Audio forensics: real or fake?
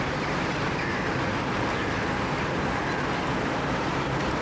real